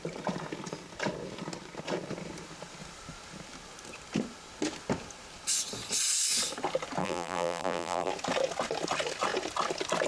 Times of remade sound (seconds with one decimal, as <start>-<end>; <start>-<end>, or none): 7.0-8.1